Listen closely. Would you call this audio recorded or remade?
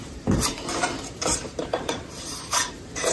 remade